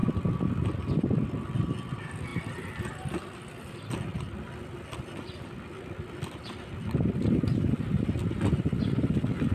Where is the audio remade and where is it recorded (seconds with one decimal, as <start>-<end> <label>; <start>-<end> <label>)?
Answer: 0.0-9.5 recorded